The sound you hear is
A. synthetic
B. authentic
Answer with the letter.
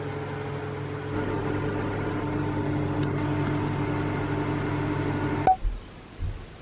B